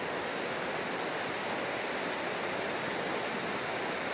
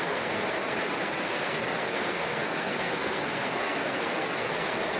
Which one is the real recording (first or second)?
first